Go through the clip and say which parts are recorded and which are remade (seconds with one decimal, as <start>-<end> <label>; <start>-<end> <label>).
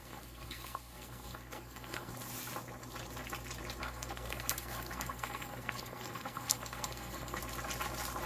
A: 0.0-2.1 remade; 2.1-3.8 recorded; 3.8-7.4 remade; 7.4-8.3 recorded